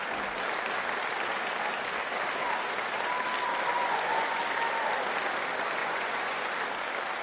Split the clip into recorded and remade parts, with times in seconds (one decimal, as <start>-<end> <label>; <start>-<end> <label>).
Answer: 0.0-3.7 recorded; 3.7-4.4 remade; 4.4-5.8 recorded; 5.8-6.5 remade; 6.5-7.2 recorded

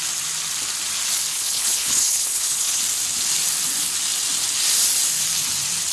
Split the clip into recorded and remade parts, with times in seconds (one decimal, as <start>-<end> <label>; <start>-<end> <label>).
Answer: 0.0-1.3 recorded; 1.3-2.8 remade; 2.8-5.9 recorded